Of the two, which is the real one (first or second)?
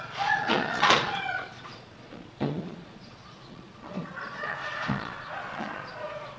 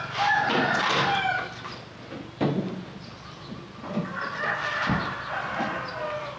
second